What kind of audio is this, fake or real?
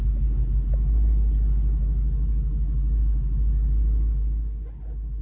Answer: real